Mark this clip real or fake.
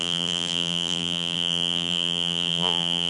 fake